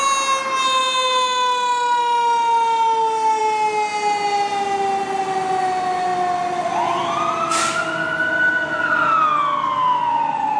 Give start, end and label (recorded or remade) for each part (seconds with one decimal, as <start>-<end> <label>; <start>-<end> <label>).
0.0-10.6 recorded